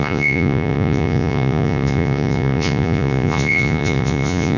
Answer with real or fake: fake